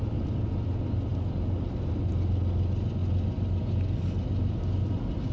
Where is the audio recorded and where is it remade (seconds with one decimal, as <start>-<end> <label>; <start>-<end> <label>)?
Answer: 0.0-5.3 recorded